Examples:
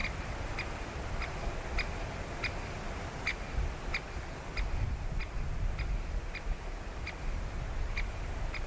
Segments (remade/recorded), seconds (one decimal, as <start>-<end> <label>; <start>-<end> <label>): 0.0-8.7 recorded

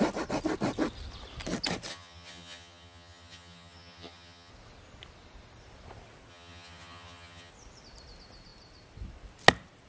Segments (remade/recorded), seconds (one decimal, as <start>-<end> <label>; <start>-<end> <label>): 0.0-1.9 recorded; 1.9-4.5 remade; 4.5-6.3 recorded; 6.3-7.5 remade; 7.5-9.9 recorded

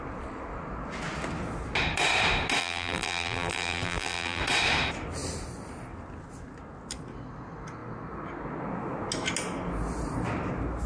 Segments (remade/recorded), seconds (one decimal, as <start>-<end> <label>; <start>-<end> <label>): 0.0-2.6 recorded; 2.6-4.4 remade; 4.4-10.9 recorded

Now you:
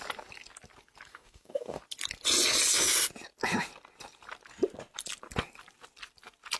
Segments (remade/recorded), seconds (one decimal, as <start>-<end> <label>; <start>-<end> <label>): 0.0-1.1 recorded; 1.1-1.8 remade; 1.8-6.6 recorded

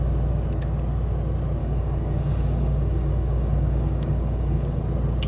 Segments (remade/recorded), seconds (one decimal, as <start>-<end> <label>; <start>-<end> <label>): 0.0-1.6 recorded; 1.6-4.8 remade; 4.8-5.3 recorded